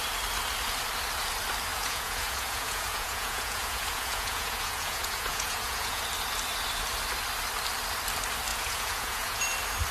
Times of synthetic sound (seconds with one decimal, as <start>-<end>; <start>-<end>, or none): 1.7-6.0; 8.5-9.4